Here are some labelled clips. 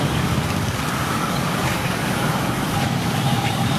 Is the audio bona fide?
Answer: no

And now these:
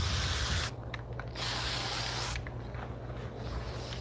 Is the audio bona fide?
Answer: yes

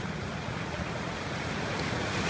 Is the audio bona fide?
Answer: no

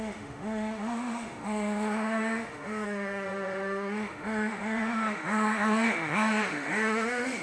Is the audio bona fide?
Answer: no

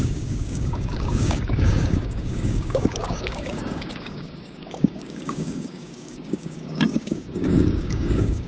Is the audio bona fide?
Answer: no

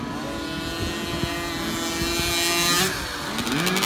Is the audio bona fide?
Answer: yes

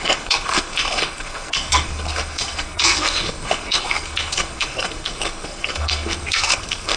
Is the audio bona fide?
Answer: no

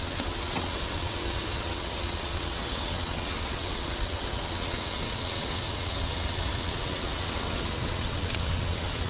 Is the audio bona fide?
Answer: no